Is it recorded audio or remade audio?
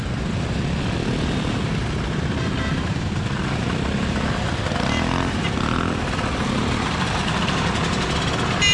recorded